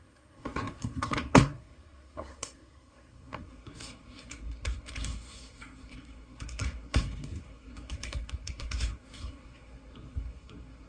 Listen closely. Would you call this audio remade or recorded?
remade